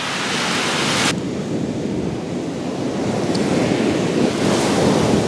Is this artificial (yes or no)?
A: no